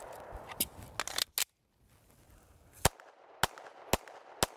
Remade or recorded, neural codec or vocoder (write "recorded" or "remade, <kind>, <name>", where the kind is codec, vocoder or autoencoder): recorded